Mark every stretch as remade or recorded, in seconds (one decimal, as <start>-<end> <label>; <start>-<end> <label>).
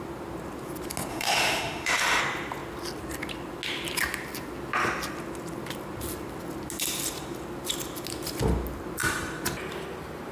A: 0.0-1.1 recorded; 1.1-2.2 remade; 2.2-10.3 recorded